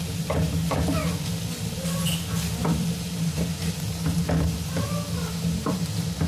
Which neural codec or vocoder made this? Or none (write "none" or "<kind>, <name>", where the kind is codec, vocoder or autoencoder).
none